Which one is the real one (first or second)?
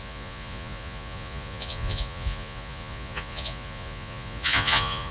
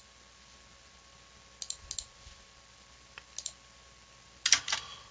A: second